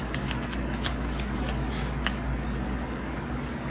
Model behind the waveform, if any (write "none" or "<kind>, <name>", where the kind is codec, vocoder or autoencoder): codec, DAC